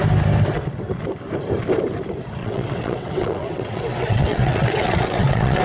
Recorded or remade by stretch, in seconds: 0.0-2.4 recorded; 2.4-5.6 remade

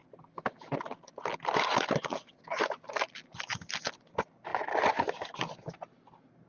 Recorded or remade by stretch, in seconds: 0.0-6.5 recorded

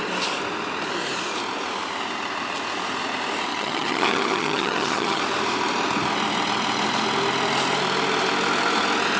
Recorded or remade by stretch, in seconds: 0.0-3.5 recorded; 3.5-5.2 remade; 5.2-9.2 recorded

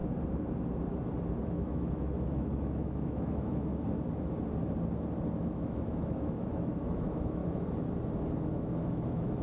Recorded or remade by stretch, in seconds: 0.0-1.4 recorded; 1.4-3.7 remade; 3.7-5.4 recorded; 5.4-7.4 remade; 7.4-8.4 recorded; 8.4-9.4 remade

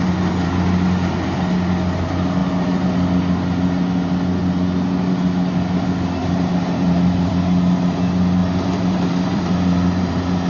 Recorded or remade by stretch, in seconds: 0.0-2.4 recorded; 2.4-2.9 remade; 2.9-6.2 recorded; 6.2-7.3 remade; 7.3-8.4 recorded; 8.4-10.5 remade

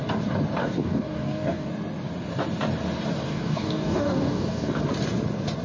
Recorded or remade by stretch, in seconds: 0.0-0.6 recorded; 0.6-1.7 remade; 1.7-3.3 recorded; 3.3-4.8 remade; 4.8-5.6 recorded

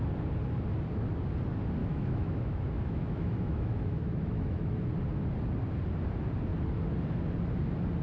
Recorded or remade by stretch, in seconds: 0.0-1.8 recorded; 1.8-4.8 remade; 4.8-8.0 recorded

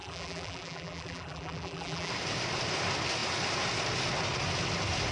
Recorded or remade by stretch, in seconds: 0.0-2.1 remade; 2.1-5.1 recorded